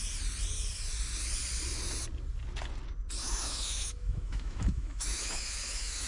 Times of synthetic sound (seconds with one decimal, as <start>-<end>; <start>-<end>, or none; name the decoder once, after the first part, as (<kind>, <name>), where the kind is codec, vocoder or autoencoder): 3.2-6.1 (autoencoder, DAC-VAE)